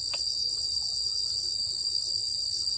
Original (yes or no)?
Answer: yes